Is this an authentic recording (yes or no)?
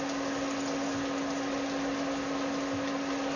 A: yes